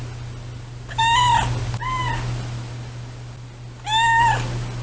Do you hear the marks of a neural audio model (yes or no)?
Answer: no